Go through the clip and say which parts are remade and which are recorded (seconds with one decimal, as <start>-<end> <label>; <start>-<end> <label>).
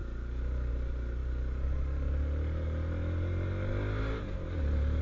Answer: 0.0-5.0 recorded